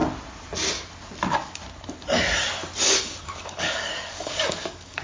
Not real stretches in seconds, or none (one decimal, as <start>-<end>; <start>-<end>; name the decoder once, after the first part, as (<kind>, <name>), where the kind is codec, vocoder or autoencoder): 3.0-5.0 (codec, DAC)